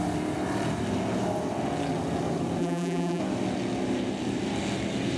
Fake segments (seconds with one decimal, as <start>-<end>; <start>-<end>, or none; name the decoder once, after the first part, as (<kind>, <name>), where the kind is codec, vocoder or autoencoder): 2.6-3.2 (vocoder, BigVGAN v2)

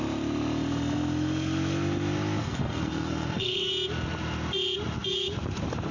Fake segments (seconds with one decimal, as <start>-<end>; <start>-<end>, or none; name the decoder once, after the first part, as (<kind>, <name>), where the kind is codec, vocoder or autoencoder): 2.4-3.7 (codec, SNAC)

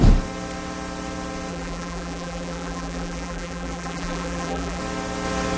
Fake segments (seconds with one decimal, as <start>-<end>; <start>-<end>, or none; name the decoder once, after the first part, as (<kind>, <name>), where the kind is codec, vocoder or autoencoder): 1.5-4.8 (vocoder, BigVGAN v2)

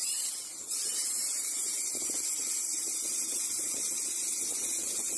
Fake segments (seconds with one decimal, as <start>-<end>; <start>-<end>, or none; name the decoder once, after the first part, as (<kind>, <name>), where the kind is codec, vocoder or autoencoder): 0.0-5.2 (vocoder, BigVGAN v2)

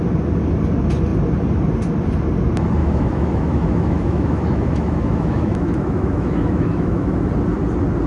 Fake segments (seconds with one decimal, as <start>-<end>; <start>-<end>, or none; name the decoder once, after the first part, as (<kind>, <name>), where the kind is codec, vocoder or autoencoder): 2.8-7.3 (autoencoder, DAC-VAE)

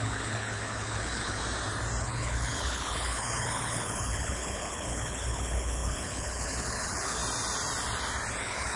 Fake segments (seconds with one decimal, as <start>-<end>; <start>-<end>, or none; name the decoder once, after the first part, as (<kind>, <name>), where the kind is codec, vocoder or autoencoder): 0.0-1.4 (codec, HILCodec); 2.0-7.2; 8.4-8.8

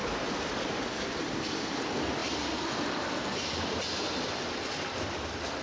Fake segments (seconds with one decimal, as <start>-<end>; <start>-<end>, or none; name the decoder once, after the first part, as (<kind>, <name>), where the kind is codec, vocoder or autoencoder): none